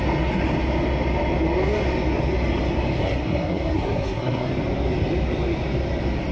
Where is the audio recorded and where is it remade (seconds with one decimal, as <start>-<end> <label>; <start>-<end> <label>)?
0.0-3.0 recorded; 3.0-4.5 remade; 4.5-6.3 recorded